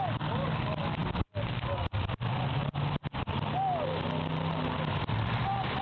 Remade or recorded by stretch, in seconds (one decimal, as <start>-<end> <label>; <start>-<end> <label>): 0.0-5.8 recorded